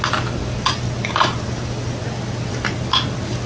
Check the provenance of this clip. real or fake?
real